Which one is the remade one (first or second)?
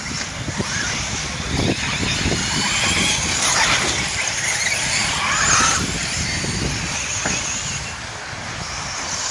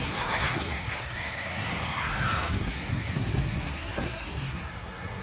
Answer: second